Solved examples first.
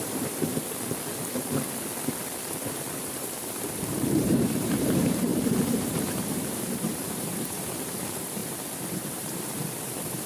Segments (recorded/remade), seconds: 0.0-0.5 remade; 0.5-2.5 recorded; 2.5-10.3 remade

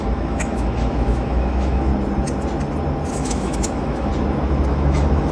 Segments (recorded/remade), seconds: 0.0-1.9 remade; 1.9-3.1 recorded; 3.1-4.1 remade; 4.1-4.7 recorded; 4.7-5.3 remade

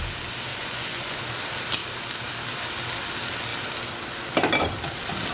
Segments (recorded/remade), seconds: 0.0-0.5 recorded; 0.5-1.2 remade; 1.2-5.3 recorded

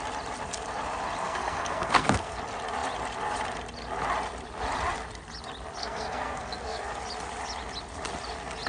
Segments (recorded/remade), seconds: 0.0-1.2 recorded; 1.2-2.4 remade; 2.4-5.8 recorded; 5.8-7.0 remade; 7.0-8.7 recorded